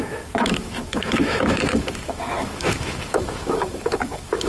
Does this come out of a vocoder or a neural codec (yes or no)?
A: yes